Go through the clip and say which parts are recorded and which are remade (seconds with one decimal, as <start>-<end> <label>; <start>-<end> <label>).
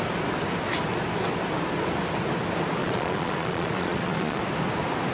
0.0-2.8 recorded; 2.8-4.4 remade; 4.4-5.1 recorded